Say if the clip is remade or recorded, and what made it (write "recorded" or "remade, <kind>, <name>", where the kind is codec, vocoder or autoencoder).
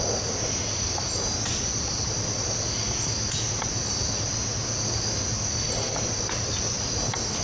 recorded